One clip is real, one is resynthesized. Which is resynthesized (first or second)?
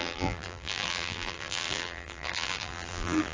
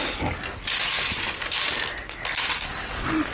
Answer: first